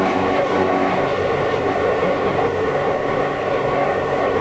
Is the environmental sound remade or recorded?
remade